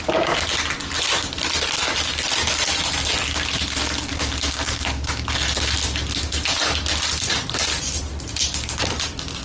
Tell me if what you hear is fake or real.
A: real